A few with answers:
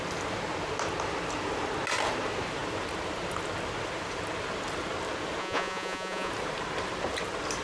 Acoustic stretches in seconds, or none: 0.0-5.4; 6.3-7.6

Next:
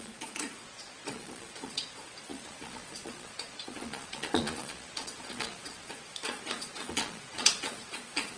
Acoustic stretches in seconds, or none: none

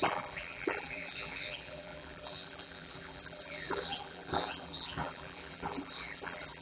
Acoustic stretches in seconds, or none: none

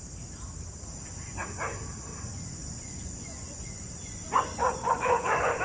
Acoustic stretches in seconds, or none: 0.0-2.1